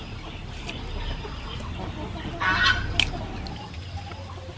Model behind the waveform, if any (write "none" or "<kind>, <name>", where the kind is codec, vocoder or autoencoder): none